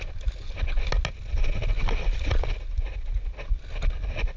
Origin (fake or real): real